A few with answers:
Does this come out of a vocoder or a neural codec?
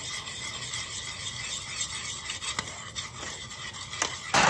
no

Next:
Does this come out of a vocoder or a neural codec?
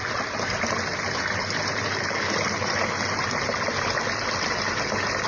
no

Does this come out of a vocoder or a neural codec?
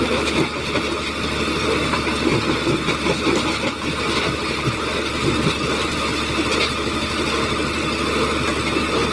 no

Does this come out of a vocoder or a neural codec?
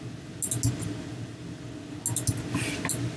no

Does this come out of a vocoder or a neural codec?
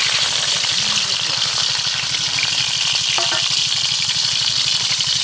no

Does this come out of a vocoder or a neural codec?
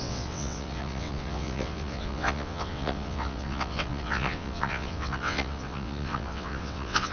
yes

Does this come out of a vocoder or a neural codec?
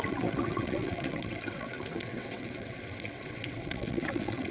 yes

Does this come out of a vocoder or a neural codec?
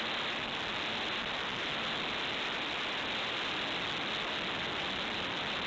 no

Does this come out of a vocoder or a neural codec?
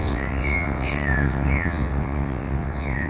yes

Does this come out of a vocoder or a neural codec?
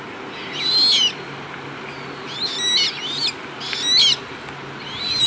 no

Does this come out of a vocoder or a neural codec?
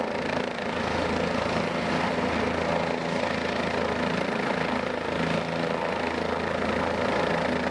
no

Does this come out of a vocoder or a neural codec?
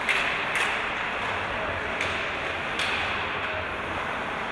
no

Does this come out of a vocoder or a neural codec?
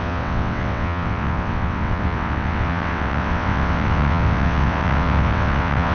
yes